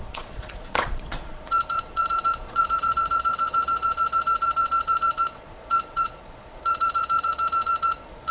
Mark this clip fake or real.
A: fake